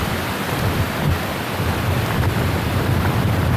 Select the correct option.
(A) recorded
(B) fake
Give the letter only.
B